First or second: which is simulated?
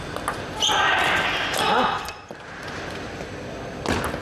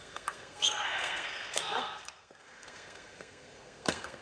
second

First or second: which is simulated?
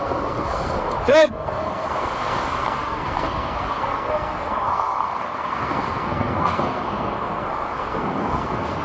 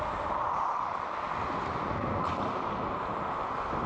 first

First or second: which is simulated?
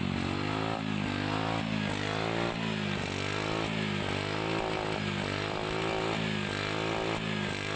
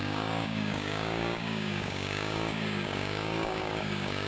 second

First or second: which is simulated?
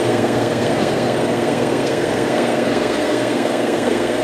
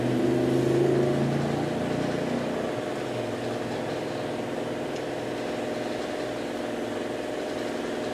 first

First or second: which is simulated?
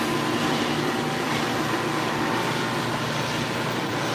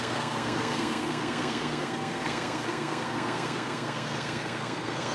second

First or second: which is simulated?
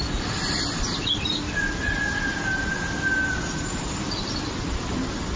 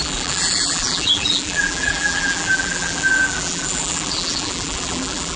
second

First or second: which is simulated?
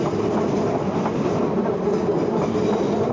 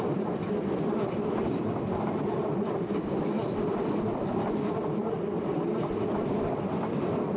second